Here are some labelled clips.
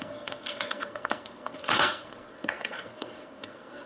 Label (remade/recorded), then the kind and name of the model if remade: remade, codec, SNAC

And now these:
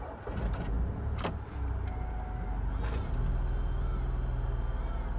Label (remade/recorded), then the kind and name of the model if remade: recorded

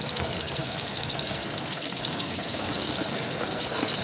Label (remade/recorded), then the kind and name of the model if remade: remade, codec, SNAC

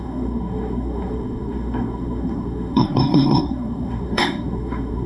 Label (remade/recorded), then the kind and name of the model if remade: remade, codec, SNAC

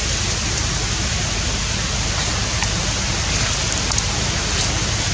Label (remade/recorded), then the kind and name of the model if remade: recorded